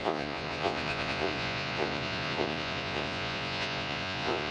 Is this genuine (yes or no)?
no